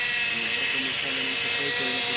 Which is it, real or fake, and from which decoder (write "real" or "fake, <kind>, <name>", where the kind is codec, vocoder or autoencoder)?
real